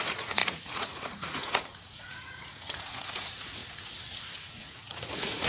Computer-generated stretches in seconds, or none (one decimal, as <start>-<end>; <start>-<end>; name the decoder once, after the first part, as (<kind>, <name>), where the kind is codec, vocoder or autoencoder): 0.0-3.6 (vocoder, Vocos); 4.2-5.5

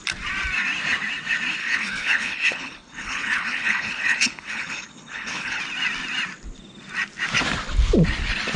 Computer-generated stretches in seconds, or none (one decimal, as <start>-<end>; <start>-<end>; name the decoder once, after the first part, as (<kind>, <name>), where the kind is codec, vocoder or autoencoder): 1.6-5.6 (codec, HILCodec)

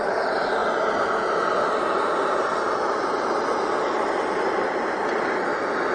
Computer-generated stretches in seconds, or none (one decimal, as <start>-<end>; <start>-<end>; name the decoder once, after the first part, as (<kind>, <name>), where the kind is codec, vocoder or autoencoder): none

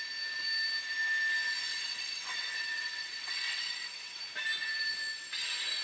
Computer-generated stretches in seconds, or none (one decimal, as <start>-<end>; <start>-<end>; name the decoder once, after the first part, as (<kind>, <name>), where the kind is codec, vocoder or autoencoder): 1.7-4.2 (vocoder, WaveNeXt)

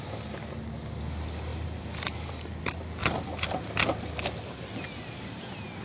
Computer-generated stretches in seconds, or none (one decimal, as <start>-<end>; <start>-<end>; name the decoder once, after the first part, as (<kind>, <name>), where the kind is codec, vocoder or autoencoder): none